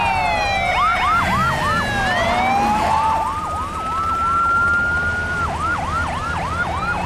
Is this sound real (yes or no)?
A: yes